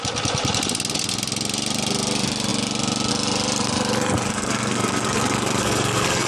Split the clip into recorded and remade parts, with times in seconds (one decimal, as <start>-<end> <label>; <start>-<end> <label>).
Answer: 0.0-4.3 recorded; 4.3-6.3 remade